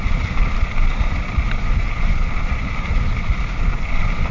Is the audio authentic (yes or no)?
yes